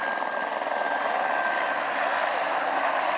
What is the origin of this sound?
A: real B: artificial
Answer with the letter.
A